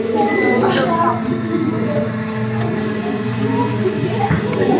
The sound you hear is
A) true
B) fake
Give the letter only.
A